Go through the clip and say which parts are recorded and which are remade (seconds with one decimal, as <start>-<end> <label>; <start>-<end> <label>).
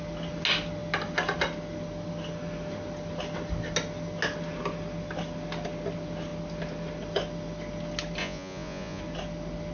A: 0.0-8.2 recorded; 8.2-9.0 remade; 9.0-9.7 recorded